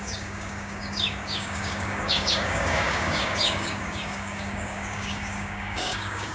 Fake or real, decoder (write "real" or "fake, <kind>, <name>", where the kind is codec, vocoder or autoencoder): fake, codec, DAC